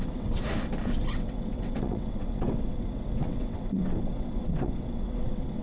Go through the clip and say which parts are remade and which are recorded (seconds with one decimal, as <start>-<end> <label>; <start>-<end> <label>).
0.0-0.4 remade; 0.4-1.1 recorded; 1.1-5.6 remade